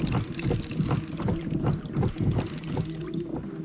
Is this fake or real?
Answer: real